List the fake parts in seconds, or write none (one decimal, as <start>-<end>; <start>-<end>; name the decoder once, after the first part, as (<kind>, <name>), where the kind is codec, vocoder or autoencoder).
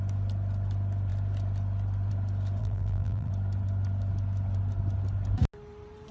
2.6-3.3 (vocoder, BigVGAN v2)